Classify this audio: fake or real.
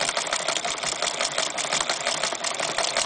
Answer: real